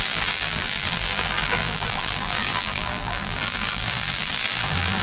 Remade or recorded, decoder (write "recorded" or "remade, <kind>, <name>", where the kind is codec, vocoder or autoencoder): remade, vocoder, BigVGAN v2